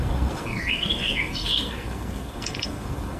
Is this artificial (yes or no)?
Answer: yes